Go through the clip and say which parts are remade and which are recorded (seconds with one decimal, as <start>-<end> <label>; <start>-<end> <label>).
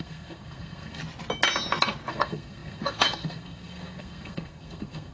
0.0-1.0 remade; 1.0-2.1 recorded; 2.1-5.1 remade